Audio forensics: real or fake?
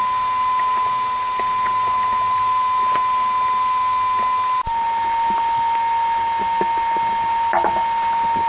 real